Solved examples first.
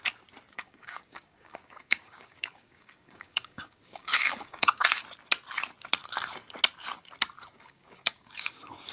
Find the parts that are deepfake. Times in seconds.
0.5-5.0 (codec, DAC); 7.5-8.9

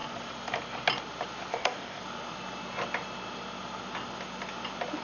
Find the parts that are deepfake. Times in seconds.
1.5-2.0 (codec, DAC)

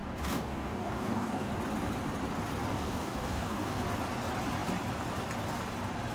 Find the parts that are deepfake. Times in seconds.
0.0-1.5 (codec, DAC); 2.7-3.8

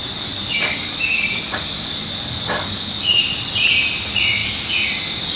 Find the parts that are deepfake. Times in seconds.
0.0-3.2 (codec, DAC)

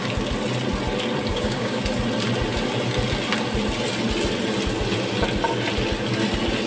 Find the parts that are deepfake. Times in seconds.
1.3-1.8 (codec, DAC)

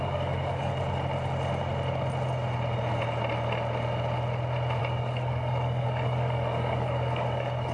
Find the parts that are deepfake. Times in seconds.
0.0-0.7 (codec, DAC); 4.8-7.7

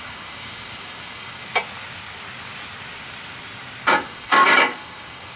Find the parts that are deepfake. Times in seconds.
0.0-1.5 (codec, DAC); 3.9-5.4

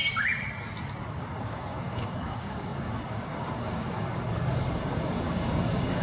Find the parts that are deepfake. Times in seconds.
1.1-6.0 (codec, DAC)